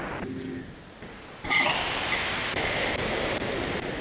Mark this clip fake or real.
real